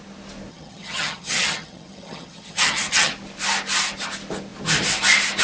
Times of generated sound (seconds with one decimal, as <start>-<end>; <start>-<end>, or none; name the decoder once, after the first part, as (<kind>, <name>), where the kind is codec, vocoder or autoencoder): 0.5-3.1 (vocoder, HiFi-GAN)